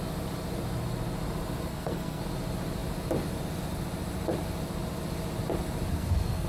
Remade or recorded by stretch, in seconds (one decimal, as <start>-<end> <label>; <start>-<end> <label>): 0.0-1.7 recorded; 1.7-2.2 remade; 2.2-5.9 recorded; 5.9-6.5 remade

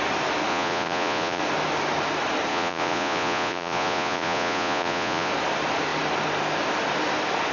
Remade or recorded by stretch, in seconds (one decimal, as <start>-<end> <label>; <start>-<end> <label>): 0.0-0.5 recorded; 0.5-1.4 remade; 1.4-2.5 recorded; 2.5-5.3 remade; 5.3-7.5 recorded

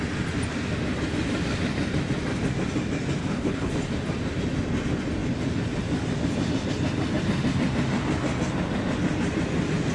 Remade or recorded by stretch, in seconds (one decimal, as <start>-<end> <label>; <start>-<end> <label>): 0.0-3.2 recorded; 3.2-3.7 remade; 3.7-9.9 recorded

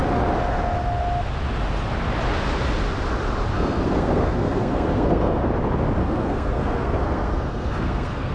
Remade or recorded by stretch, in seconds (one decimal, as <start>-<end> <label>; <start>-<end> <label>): 0.0-3.5 recorded; 3.5-5.5 remade; 5.5-6.0 recorded; 6.0-8.3 remade